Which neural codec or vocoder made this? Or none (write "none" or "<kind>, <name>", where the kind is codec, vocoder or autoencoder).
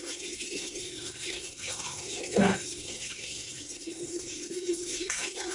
codec, SNAC